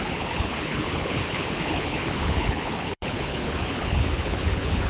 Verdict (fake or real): fake